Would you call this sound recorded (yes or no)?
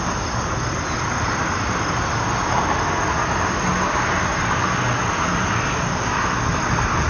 yes